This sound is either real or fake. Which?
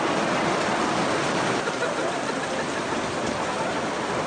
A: real